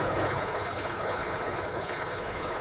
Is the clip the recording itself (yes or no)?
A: no